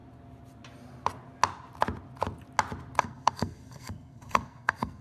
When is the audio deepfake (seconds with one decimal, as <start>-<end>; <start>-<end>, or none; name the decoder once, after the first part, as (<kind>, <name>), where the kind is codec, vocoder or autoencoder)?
3.0-5.0 (codec, SNAC)

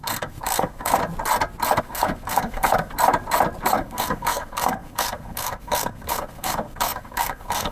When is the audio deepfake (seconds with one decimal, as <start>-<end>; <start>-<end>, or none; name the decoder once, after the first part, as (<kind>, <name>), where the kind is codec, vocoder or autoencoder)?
0.0-1.0 (codec, SNAC); 1.8-2.9; 3.7-7.7

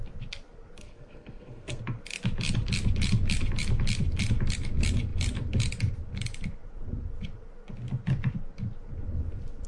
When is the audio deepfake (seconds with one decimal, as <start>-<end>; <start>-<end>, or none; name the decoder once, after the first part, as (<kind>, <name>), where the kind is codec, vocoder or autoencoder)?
0.8-1.8 (codec, SNAC)

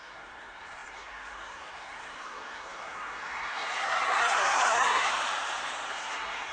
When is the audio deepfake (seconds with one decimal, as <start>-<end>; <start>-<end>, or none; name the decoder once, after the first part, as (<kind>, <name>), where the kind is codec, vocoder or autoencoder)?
0.0-5.1 (codec, SNAC); 5.9-6.5

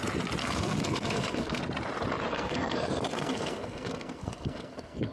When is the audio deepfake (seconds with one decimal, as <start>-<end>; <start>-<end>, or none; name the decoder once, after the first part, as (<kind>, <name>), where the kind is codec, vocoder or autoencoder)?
0.4-1.6 (codec, SNAC); 2.3-5.1

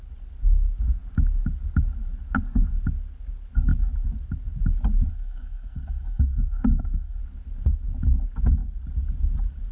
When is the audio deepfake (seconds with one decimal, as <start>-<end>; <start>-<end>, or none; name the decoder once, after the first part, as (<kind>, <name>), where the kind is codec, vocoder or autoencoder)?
5.1-7.2 (codec, SNAC)

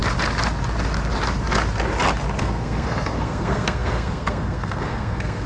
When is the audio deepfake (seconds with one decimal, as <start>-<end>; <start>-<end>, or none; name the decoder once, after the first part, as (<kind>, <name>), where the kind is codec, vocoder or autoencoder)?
2.4-5.5 (codec, SNAC)